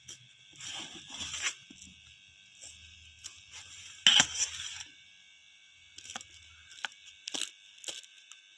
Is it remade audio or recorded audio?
recorded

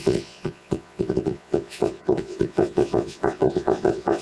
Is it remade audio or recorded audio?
remade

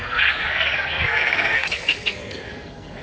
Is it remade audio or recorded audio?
remade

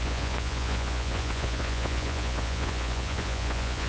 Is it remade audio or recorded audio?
remade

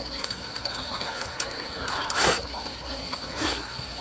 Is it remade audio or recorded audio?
remade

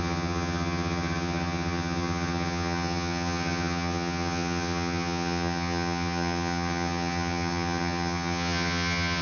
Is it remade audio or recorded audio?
remade